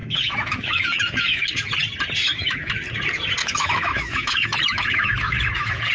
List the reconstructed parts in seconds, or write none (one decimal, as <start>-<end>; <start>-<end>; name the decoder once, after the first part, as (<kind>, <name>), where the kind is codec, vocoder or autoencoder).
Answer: 0.0-1.5 (autoencoder, DAC-VAE); 2.2-2.7; 3.4-5.9